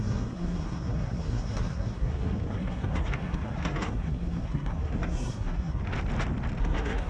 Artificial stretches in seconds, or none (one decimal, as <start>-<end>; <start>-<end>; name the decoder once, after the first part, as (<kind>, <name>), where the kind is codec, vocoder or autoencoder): 0.0-5.8 (codec, SNAC); 6.6-7.1